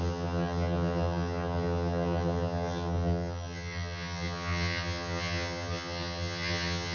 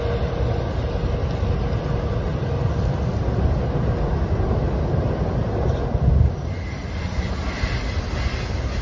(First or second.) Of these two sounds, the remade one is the first